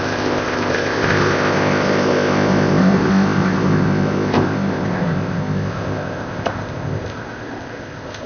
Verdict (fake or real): fake